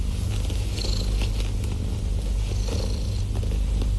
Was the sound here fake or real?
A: real